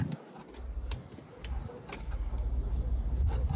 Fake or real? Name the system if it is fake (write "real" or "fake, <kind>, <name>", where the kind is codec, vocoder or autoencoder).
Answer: real